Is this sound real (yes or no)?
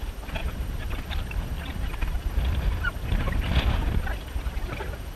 no